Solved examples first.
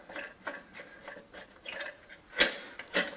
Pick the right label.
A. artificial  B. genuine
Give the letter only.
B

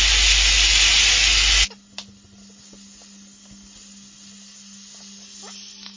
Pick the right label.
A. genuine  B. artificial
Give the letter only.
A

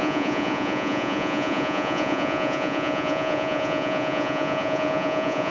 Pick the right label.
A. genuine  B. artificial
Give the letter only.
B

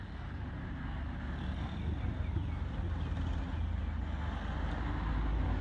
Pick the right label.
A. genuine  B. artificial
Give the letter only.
A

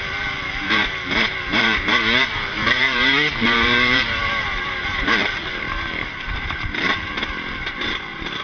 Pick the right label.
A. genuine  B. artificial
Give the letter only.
B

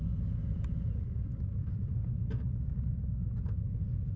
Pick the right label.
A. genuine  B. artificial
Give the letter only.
A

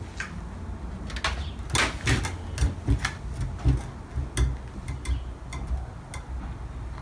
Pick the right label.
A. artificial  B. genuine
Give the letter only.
B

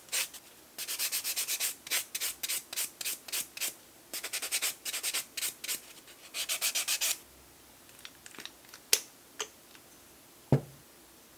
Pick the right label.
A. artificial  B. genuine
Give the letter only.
B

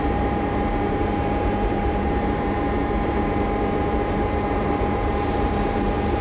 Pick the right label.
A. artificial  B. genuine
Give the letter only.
A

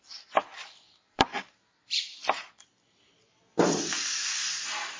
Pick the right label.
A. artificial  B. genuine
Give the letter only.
A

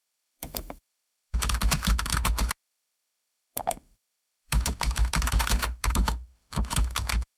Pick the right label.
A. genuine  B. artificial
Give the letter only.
B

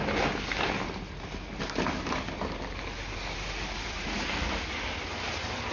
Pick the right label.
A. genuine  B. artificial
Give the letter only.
A